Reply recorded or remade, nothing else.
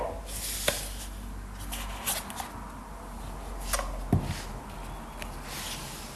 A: recorded